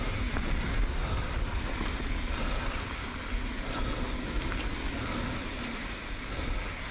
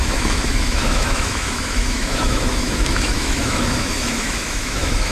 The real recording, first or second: first